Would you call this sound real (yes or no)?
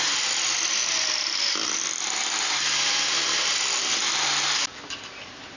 yes